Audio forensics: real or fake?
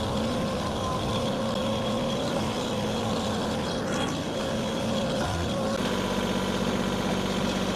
real